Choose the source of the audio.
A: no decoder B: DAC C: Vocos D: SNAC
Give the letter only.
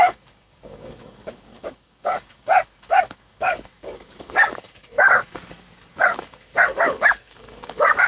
B